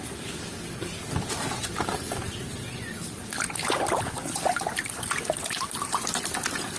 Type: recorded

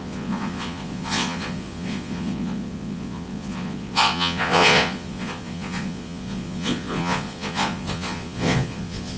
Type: remade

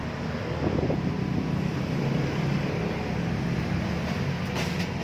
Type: recorded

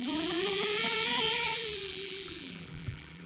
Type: remade